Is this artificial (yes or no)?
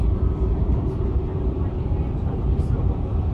yes